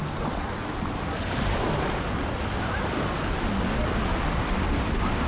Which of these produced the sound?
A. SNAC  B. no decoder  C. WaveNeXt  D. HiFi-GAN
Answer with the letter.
B